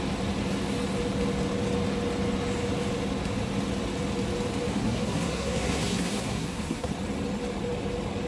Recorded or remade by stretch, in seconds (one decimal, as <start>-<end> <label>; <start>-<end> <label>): 0.0-4.7 recorded; 4.7-6.9 remade; 6.9-8.3 recorded